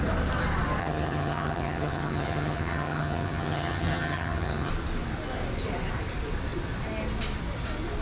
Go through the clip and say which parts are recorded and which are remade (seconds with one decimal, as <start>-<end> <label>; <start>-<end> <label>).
0.0-0.8 recorded; 0.8-4.7 remade; 4.7-8.0 recorded

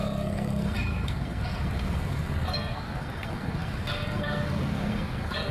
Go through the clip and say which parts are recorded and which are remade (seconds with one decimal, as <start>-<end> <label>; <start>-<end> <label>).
0.0-5.5 remade

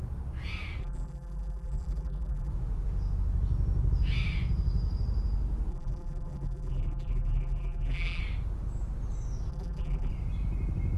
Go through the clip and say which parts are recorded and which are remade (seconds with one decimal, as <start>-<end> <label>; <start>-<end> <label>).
0.0-0.8 recorded; 0.8-2.5 remade; 2.5-5.7 recorded; 5.7-8.2 remade; 8.2-9.5 recorded; 9.5-10.1 remade; 10.1-11.0 recorded

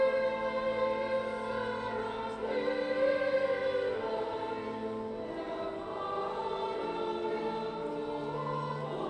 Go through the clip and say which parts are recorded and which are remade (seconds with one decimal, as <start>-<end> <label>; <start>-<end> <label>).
0.0-9.1 recorded

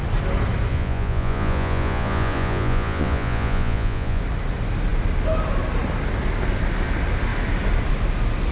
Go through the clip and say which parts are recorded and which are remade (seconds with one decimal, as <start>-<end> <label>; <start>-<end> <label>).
0.0-0.7 recorded; 0.7-4.2 remade; 4.2-8.5 recorded

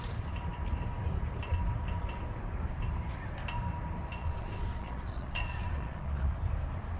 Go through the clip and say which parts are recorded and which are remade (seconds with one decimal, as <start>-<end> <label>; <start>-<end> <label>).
0.0-4.2 recorded; 4.2-6.3 remade; 6.3-7.0 recorded

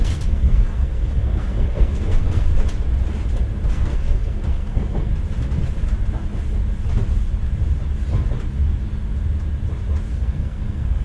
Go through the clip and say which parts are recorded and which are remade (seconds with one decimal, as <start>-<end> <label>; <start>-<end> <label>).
0.0-2.5 remade; 2.5-3.7 recorded; 3.7-5.1 remade; 5.1-10.1 recorded; 10.1-11.0 remade

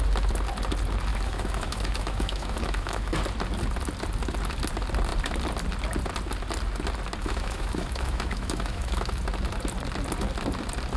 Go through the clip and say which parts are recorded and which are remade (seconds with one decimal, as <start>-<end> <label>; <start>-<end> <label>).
0.0-1.1 recorded; 1.1-3.2 remade; 3.2-7.2 recorded; 7.2-9.2 remade; 9.2-11.0 recorded